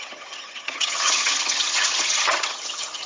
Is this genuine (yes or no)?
no